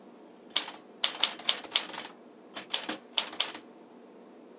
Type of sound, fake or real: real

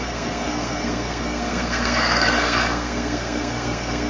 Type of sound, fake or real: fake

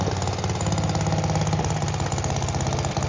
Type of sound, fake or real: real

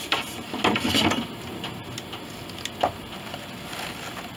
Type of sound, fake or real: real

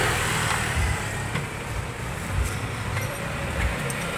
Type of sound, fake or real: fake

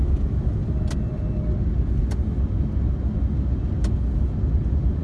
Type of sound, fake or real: real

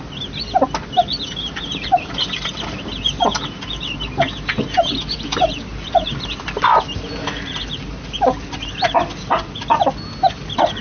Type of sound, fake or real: real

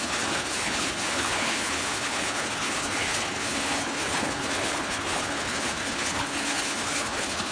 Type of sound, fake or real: fake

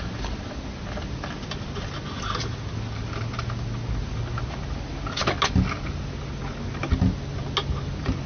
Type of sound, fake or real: real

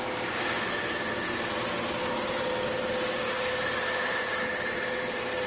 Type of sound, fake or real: real